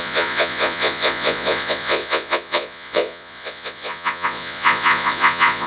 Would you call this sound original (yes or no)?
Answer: no